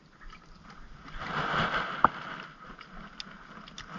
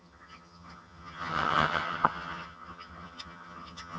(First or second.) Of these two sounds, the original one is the first